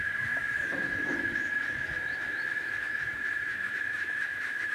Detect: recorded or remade remade